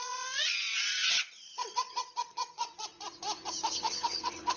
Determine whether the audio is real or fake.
fake